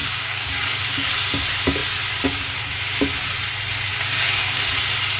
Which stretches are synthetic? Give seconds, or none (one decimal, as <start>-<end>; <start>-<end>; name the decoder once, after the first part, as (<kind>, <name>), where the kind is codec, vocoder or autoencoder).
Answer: 0.0-1.1 (codec, DAC); 3.9-4.6